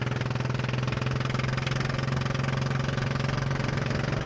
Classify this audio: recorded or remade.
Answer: recorded